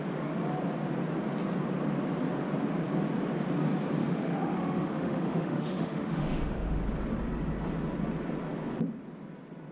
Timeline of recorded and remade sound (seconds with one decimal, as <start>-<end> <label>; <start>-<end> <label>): 0.0-4.0 recorded; 4.0-6.8 remade; 6.8-9.7 recorded